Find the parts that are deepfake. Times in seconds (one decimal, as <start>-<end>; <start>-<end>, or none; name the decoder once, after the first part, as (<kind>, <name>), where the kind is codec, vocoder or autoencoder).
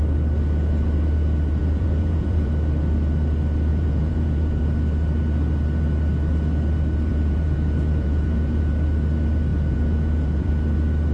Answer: 1.6-2.5 (vocoder, Vocos); 3.7-4.6; 7.1-8.7; 9.5-10.5